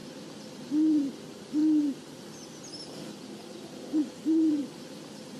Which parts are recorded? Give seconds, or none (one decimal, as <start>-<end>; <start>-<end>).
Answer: 0.0-1.6; 2.2-4.0; 4.5-5.4